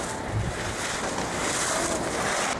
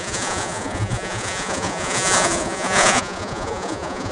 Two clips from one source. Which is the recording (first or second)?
first